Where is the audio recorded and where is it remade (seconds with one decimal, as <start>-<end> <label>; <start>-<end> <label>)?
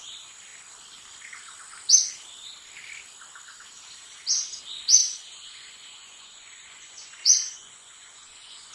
0.0-5.0 recorded; 5.0-8.7 remade